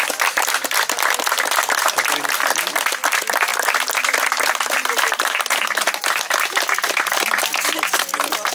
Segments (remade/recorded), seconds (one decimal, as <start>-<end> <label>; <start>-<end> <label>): 0.0-8.5 recorded